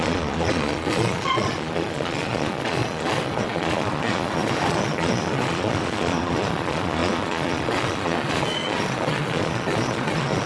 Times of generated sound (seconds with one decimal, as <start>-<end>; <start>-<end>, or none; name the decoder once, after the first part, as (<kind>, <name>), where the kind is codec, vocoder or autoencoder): 0.0-10.5 (vocoder, Vocos)